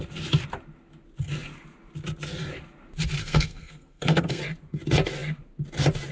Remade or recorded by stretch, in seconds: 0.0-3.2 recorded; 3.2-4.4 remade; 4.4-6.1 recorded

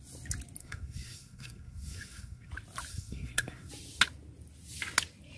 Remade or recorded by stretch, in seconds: 0.0-0.6 recorded; 0.6-2.5 remade; 2.5-2.9 recorded; 2.9-3.7 remade; 3.7-5.4 recorded

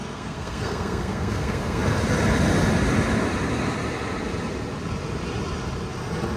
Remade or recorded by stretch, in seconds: 0.0-1.8 remade; 1.8-6.4 recorded

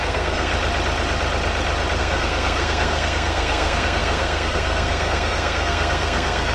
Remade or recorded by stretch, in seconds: 0.0-0.5 remade; 0.5-2.0 recorded; 2.0-6.5 remade

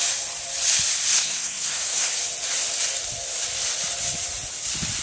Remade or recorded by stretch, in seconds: 0.0-1.1 recorded; 1.1-2.2 remade; 2.2-5.0 recorded

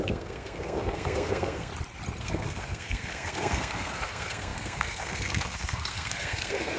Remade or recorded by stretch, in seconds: 0.0-1.7 remade; 1.7-2.2 recorded; 2.2-6.8 remade